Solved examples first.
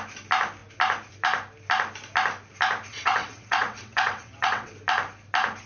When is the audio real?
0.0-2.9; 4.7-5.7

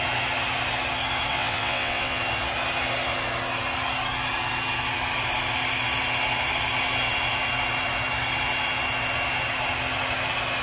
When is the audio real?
0.0-1.3; 2.2-10.6

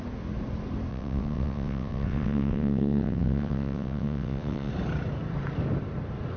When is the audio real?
0.0-0.9; 4.7-6.4

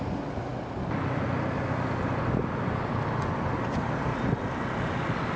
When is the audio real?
0.0-5.4